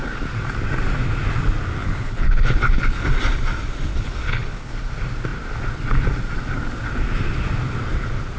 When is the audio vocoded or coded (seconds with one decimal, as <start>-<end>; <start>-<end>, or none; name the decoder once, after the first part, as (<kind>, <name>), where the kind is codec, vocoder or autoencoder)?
1.8-3.1 (codec, HILCodec); 3.9-4.7

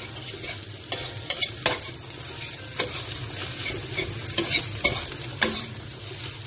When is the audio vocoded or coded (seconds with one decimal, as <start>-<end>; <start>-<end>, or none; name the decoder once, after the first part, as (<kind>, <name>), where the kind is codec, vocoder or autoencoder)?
5.3-6.0 (vocoder, BigVGAN v2)

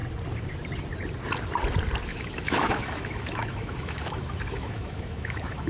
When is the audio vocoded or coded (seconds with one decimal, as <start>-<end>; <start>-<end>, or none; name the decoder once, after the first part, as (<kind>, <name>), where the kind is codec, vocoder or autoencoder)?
2.1-5.7 (autoencoder, DAC-VAE)

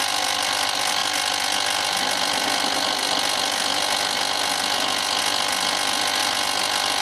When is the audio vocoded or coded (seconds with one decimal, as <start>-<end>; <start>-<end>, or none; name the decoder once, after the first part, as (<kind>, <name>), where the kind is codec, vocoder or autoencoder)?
none

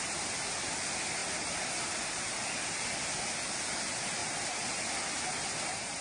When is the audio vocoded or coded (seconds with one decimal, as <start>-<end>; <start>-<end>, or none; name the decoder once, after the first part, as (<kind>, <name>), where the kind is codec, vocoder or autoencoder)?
none